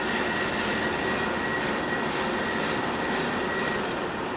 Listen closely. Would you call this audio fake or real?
real